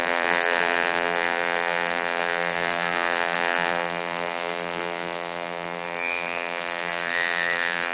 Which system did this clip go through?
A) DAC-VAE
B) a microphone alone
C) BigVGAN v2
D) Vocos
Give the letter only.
C